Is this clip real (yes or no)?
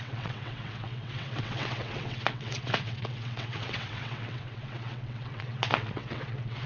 no